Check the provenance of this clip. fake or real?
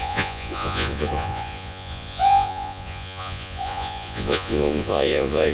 fake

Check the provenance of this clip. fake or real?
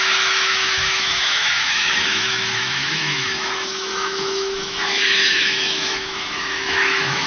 fake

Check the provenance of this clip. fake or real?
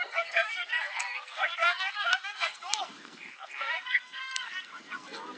fake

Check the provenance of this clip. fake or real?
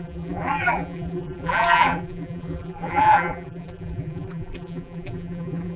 fake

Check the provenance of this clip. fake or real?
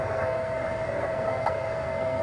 fake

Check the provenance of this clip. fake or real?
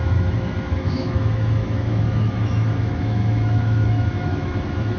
fake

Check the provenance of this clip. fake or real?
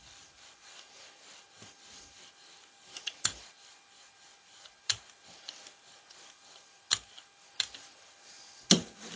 real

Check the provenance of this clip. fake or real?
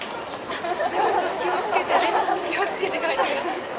real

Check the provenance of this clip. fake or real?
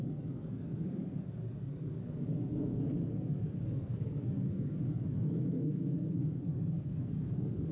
fake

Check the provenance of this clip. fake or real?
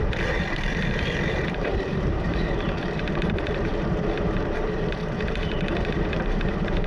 fake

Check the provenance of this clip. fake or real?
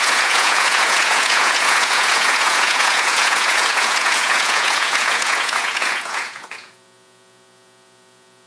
fake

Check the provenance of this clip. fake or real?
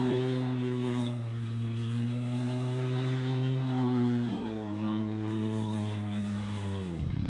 fake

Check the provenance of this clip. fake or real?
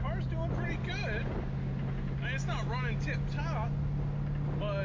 real